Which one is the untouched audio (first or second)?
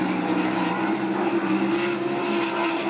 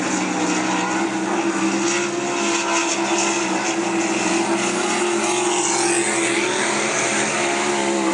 second